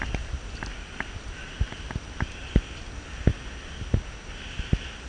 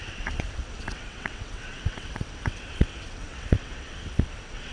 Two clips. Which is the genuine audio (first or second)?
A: first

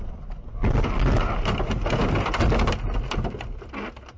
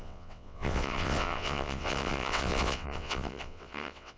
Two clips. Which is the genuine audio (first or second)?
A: first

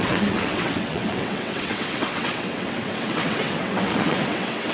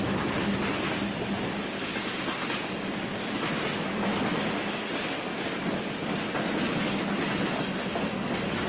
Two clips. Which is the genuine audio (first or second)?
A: second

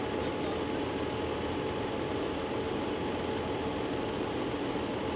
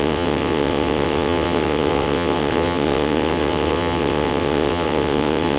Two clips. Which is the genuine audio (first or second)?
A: first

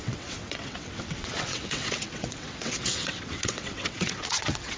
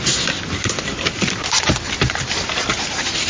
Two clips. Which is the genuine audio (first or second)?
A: second